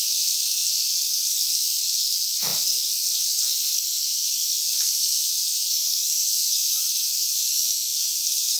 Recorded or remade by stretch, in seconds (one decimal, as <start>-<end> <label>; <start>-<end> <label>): 0.0-8.6 remade